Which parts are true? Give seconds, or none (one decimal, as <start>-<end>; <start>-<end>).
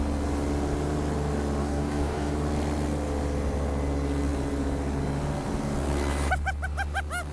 0.0-1.6; 2.3-7.3